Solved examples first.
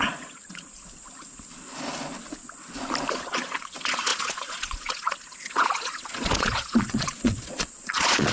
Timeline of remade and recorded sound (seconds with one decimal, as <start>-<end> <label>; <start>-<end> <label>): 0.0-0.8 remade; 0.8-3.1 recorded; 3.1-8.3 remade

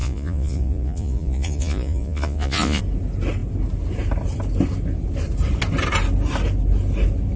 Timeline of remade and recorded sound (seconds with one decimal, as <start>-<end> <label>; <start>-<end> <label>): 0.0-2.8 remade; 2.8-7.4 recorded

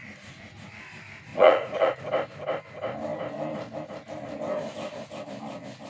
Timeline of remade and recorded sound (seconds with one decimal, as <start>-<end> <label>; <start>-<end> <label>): 0.0-0.7 remade; 0.7-1.3 recorded; 1.3-2.0 remade; 2.0-5.9 recorded